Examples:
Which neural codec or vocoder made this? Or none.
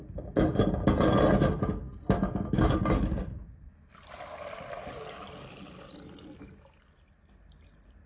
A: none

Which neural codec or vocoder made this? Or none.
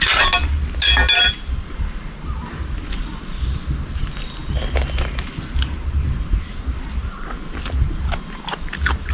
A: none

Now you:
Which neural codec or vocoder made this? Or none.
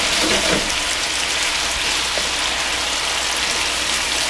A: none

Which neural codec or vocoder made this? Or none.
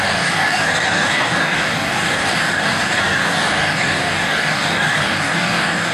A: codec, DAC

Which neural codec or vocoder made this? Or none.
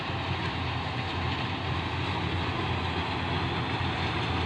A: none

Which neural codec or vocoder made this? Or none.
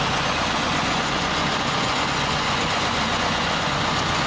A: vocoder, Vocos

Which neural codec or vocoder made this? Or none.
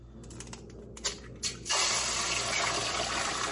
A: none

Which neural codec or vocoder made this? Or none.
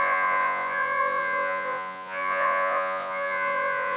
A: vocoder, Vocos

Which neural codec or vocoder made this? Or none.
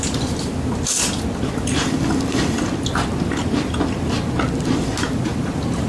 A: none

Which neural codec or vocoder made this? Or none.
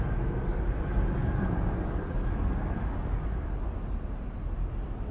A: none